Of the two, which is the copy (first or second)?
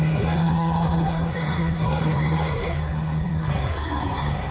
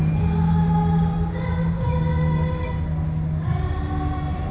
first